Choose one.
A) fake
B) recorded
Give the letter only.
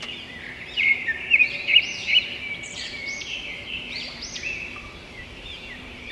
A